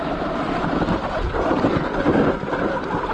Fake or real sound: real